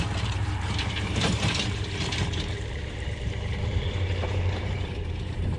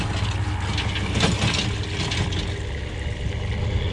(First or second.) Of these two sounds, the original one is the second